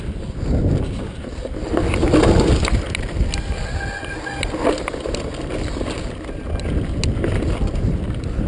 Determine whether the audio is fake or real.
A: real